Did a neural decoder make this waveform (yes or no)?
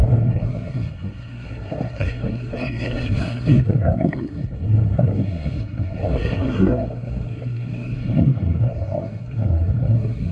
yes